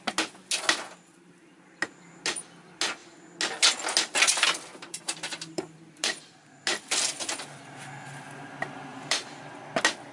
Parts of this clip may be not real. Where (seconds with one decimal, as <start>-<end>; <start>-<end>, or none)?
4.7-6.3; 8.9-9.4

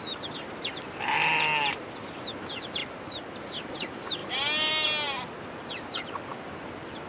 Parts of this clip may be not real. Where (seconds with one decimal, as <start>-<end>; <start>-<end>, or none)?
none

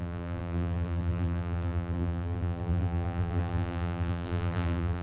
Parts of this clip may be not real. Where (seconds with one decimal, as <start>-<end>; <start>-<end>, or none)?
0.0-5.0

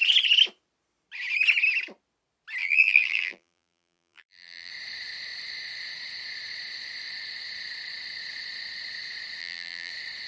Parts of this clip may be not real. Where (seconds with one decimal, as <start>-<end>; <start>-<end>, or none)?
2.6-4.7; 9.4-9.9

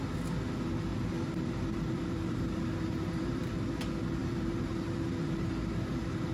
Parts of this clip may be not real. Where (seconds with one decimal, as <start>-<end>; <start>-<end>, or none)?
0.9-3.4; 4.2-6.3

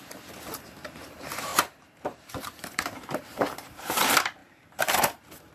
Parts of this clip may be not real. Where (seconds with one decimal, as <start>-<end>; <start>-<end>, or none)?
0.0-1.5; 2.0-5.5

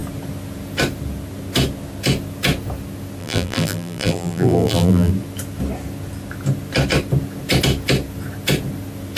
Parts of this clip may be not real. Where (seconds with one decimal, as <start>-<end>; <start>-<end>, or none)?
3.2-5.1